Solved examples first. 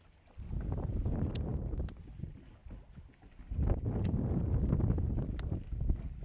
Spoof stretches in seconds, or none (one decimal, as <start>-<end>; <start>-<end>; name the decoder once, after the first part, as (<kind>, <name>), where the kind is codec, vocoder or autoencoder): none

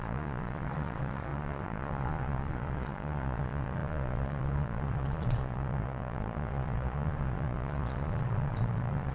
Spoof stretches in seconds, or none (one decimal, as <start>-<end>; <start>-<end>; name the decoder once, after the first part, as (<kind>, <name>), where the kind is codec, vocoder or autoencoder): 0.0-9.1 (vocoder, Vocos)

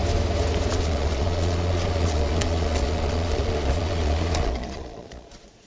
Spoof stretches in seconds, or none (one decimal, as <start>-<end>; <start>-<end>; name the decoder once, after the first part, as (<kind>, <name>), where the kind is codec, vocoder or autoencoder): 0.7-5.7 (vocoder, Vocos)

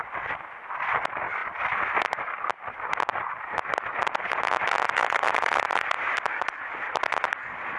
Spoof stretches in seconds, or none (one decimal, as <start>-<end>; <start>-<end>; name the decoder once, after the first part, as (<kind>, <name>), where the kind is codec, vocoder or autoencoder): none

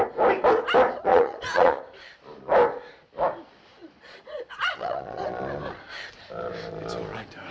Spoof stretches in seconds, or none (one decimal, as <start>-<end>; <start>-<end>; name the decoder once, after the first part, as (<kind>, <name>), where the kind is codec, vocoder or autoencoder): 1.1-1.8 (vocoder, Vocos); 3.7-5.2

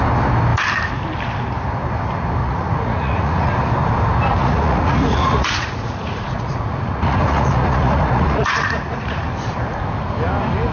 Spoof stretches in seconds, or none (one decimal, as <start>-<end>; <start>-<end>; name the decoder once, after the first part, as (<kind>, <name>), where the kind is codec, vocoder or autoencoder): 2.4-3.5 (vocoder, Vocos); 4.4-9.2

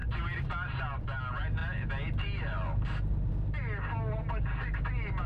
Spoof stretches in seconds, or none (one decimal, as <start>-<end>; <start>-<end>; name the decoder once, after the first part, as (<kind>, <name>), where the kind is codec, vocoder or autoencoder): none

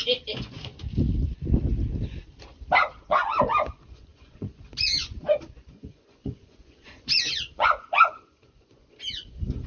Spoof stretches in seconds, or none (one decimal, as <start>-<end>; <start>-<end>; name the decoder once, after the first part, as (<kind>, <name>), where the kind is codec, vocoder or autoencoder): 0.0-0.7 (vocoder, Vocos); 3.0-9.7